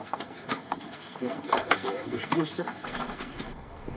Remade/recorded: remade